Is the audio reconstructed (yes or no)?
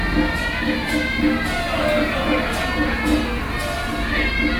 no